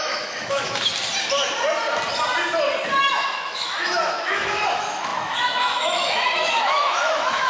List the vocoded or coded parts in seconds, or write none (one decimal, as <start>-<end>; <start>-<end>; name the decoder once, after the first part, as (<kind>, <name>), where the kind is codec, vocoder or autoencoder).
0.0-0.9 (autoencoder, DAC-VAE); 3.0-7.5